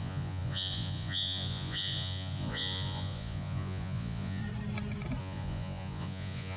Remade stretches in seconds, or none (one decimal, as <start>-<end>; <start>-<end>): 0.0-4.4; 5.2-6.6

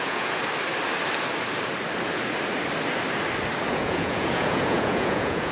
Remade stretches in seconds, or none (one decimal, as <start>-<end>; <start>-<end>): 0.0-0.4; 3.7-5.5

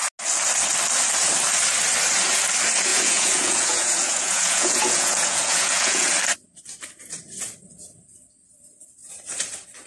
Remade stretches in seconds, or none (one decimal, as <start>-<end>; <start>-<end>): 2.9-6.1

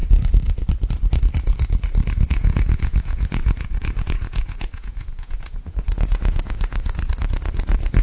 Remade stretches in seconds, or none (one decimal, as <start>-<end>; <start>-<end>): 2.3-7.1